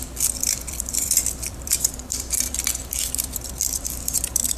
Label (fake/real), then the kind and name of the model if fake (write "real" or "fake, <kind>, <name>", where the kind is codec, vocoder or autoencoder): fake, vocoder, BigVGAN v2